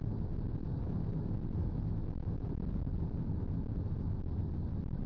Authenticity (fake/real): real